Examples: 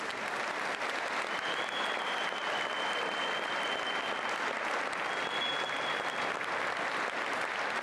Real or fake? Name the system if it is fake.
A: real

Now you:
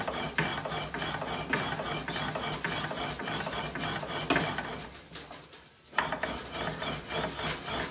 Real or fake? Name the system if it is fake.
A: real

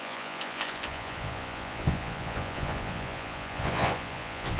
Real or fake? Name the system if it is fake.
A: fake, vocoder, Vocos